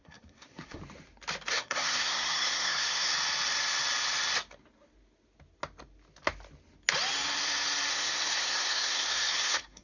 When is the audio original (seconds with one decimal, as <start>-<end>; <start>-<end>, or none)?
0.8-1.5; 3.1-7.9